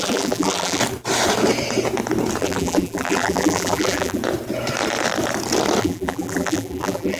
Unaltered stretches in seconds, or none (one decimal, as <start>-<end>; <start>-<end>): 0.8-2.4; 4.2-5.8